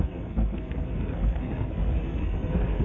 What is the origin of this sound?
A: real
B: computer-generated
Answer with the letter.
B